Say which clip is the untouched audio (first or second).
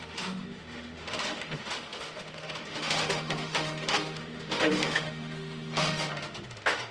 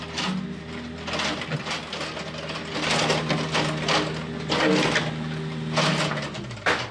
second